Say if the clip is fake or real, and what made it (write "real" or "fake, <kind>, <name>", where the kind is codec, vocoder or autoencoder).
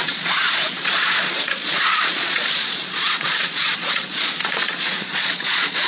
fake, vocoder, Vocos